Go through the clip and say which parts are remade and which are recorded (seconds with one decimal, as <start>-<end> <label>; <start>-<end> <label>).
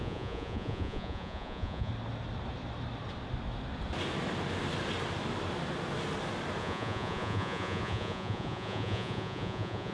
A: 0.0-1.9 remade; 1.9-6.6 recorded; 6.6-9.9 remade